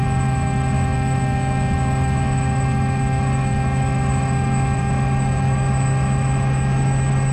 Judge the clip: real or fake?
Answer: fake